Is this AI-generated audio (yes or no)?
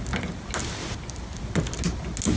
no